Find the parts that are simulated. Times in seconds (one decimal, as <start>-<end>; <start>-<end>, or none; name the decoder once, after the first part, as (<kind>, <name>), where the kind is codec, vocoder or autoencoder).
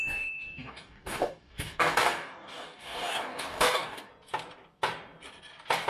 0.0-4.1 (codec, DAC)